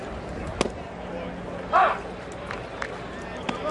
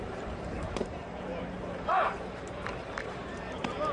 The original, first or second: first